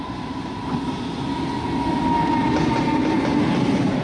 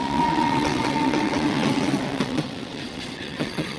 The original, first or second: first